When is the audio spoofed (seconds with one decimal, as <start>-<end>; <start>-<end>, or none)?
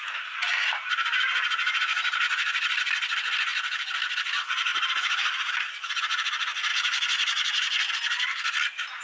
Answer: 4.7-5.9; 6.7-7.9